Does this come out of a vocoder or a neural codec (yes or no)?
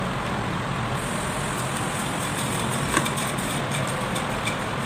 no